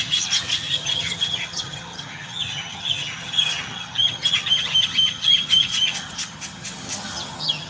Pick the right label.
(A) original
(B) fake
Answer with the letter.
B